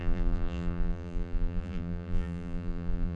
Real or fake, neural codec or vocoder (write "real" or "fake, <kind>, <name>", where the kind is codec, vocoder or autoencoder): fake, vocoder, BigVGAN v2